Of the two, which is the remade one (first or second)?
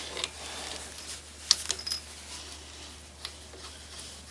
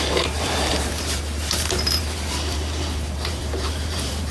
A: second